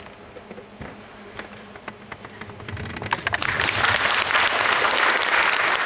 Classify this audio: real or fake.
real